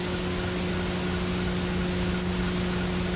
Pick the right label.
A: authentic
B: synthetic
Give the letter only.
A